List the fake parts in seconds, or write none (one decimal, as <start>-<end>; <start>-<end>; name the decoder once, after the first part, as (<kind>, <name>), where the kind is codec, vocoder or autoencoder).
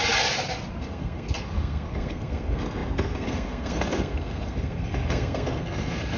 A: 0.8-6.2 (codec, SNAC)